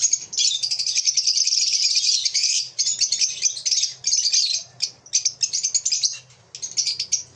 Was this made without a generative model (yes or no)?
yes